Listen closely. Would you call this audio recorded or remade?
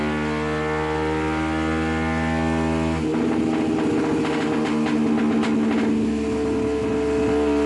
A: recorded